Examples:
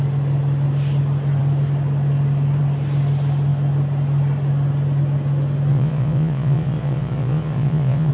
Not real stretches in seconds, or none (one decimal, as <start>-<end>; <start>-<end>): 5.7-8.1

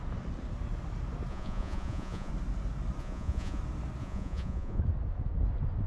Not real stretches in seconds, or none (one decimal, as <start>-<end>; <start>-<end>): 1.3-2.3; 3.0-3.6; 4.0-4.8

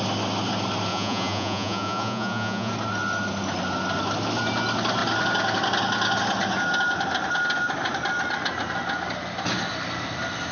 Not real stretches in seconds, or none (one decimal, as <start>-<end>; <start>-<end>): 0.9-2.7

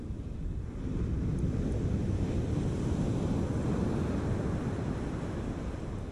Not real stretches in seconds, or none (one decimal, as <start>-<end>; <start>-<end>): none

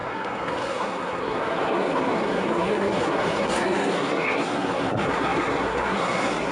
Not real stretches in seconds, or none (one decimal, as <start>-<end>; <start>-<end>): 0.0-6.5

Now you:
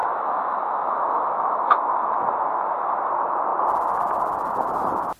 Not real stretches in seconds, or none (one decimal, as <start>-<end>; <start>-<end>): 0.0-3.1

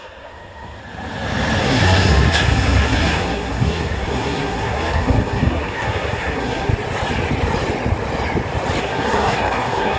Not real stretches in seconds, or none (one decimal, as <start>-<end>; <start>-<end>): 0.0-0.8; 1.6-6.7; 8.8-10.0

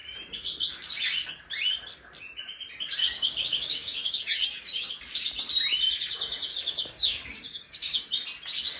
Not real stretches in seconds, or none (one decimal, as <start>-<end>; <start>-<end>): 3.0-4.9; 6.5-8.0